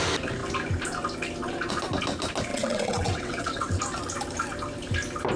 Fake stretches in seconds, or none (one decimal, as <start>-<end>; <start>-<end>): 2.5-3.8